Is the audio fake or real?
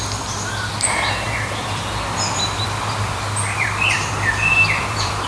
fake